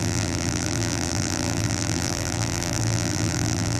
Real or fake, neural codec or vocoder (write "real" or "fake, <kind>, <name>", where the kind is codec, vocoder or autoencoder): fake, vocoder, BigVGAN v2